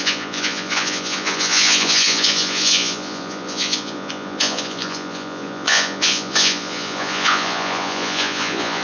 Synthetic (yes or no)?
yes